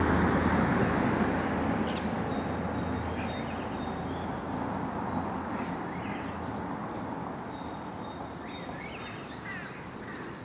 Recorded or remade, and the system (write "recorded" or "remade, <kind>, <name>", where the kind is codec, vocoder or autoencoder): recorded